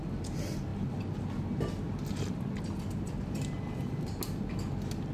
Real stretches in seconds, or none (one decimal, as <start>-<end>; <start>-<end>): 0.0-5.1